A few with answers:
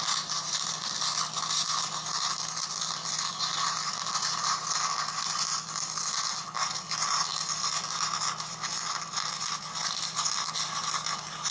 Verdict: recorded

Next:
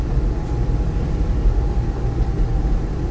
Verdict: recorded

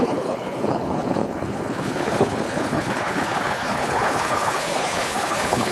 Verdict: remade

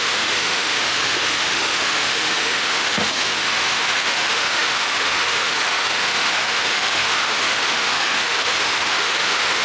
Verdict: remade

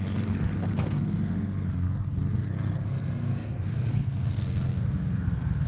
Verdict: remade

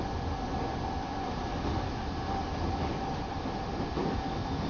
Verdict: recorded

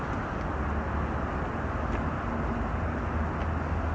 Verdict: recorded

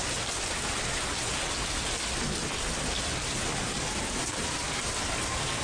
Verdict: recorded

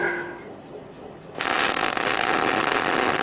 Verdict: recorded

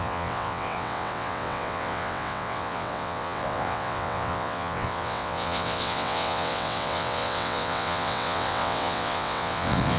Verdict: remade